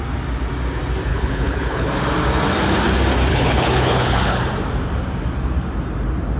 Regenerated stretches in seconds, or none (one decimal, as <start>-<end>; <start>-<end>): 1.1-1.9; 3.3-4.4